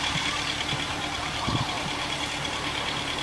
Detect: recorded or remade remade